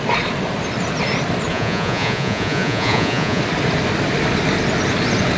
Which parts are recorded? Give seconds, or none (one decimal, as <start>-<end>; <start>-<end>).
0.0-1.5; 3.4-5.4